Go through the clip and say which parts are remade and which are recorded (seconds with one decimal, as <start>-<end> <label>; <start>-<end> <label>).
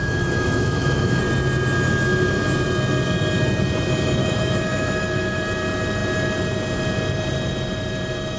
0.0-1.2 remade; 1.2-4.2 recorded; 4.2-5.4 remade; 5.4-8.4 recorded